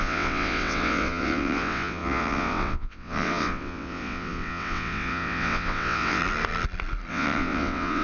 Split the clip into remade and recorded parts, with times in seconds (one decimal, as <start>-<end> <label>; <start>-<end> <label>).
0.0-6.2 remade; 6.2-7.1 recorded; 7.1-8.0 remade